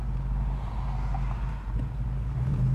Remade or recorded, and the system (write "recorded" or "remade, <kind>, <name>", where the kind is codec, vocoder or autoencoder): recorded